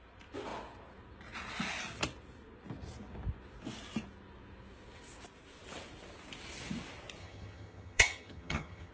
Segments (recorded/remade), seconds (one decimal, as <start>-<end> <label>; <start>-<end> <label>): 0.0-7.2 recorded; 7.2-8.9 remade